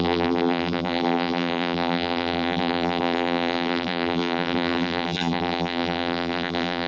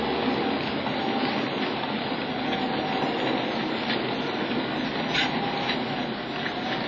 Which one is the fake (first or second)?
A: first